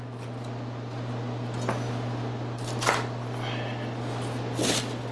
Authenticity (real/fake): real